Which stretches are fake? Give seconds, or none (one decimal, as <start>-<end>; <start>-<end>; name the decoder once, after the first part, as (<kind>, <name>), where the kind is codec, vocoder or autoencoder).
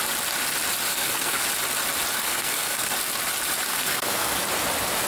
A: 0.9-1.5 (codec, SNAC); 2.2-2.9; 3.7-4.4